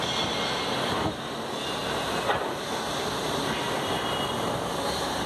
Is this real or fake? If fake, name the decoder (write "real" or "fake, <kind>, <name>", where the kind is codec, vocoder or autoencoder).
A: real